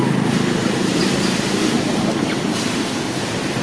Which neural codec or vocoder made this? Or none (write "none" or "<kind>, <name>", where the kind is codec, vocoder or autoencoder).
none